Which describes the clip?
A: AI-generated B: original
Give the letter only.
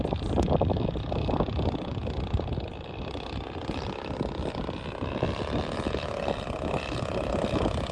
B